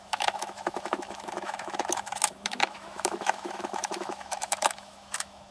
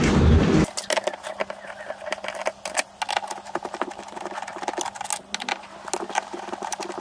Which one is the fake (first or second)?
first